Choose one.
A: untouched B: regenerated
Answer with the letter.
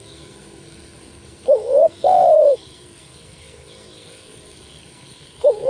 B